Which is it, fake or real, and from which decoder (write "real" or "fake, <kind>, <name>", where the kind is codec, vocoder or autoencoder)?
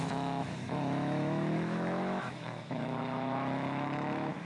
fake, autoencoder, DAC-VAE